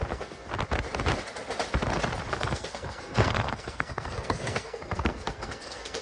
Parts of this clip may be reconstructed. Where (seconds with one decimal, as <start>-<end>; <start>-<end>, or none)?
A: 0.0-0.5; 2.3-6.0